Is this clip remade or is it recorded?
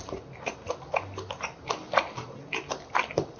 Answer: recorded